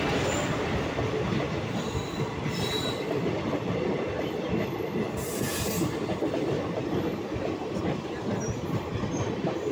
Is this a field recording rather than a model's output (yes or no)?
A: no